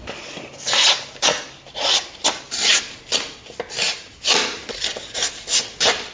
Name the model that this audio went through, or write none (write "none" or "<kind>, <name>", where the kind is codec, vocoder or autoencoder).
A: none